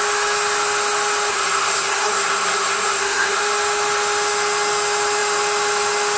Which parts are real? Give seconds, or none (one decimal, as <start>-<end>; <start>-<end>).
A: 0.0-1.3; 3.4-6.2